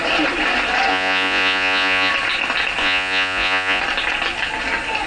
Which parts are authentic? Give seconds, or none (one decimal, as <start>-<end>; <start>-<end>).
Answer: 0.0-0.9; 2.1-2.8; 3.8-5.1